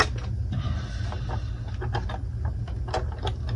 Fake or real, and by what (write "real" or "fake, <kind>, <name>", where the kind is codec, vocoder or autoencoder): real